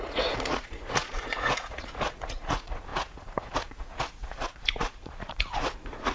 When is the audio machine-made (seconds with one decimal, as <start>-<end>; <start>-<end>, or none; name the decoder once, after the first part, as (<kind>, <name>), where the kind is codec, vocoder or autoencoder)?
0.0-6.1 (vocoder, Vocos)